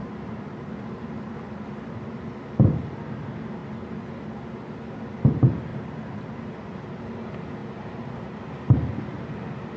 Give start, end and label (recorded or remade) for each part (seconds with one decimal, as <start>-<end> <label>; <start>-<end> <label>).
0.0-0.8 remade; 0.8-5.7 recorded; 5.7-6.4 remade; 6.4-7.6 recorded; 7.6-8.4 remade; 8.4-9.8 recorded